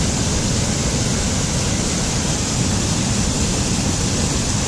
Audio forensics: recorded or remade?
recorded